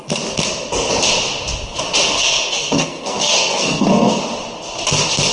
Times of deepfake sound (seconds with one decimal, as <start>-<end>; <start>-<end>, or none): 2.0-4.2

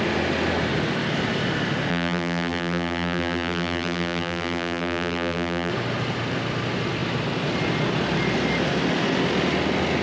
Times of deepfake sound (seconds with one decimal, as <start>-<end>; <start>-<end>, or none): 1.9-5.7

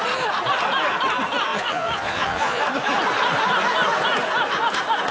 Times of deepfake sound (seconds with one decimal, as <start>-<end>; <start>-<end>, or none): 1.5-2.6

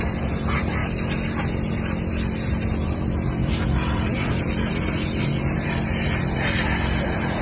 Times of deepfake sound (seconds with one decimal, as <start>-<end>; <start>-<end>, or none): 0.0-7.4